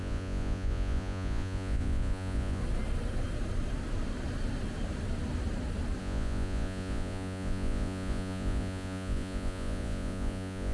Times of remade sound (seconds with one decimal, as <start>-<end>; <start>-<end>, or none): 0.0-2.6; 6.0-10.7